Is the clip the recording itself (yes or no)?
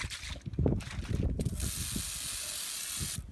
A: yes